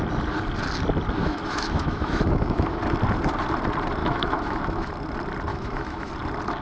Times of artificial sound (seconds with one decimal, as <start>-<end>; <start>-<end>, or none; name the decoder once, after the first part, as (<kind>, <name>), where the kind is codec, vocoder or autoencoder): 1.2-2.8 (autoencoder, DAC-VAE); 4.0-4.9; 5.5-6.1